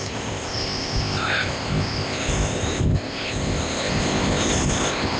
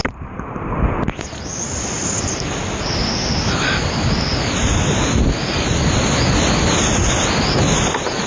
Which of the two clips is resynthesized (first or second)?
first